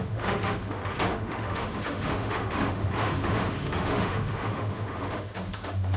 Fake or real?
fake